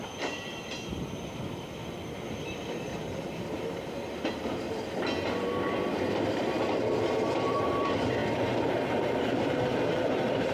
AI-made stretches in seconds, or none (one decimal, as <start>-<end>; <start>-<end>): 0.0-8.2; 8.7-10.5